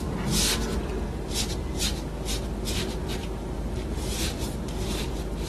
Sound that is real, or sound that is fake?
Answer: real